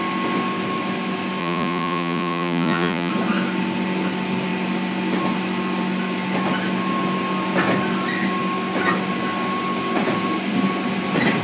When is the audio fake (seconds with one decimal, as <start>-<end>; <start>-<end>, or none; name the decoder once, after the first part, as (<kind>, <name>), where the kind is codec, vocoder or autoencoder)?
1.4-3.1 (vocoder, Vocos)